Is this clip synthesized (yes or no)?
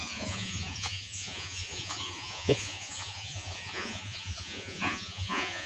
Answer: yes